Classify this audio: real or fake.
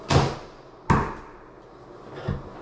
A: real